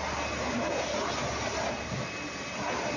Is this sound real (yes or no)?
yes